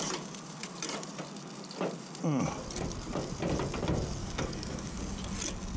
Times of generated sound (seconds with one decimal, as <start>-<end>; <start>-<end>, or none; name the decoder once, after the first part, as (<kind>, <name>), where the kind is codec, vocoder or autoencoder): 4.2-5.0 (codec, DAC)